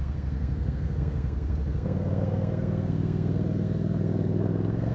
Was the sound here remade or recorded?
remade